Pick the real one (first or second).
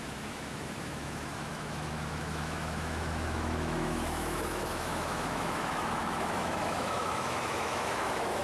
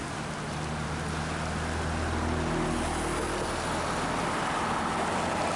second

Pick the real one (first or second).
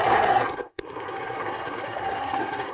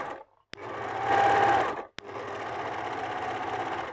second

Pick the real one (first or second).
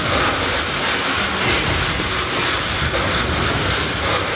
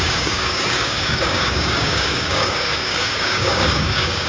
first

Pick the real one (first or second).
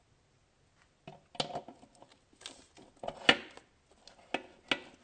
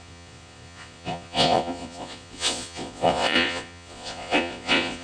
first